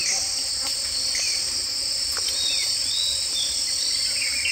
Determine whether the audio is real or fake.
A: real